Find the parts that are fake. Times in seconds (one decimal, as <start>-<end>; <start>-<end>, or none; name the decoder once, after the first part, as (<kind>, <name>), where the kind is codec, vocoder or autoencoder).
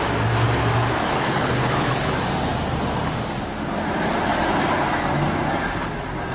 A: 1.0-2.1 (codec, HILCodec)